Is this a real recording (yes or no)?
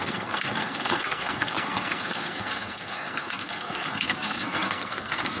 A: no